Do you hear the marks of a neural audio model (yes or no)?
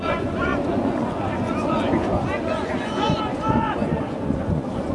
yes